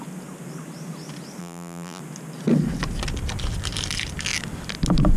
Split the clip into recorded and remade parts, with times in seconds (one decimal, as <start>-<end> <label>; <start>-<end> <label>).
0.0-1.4 recorded; 1.4-2.0 remade; 2.0-5.2 recorded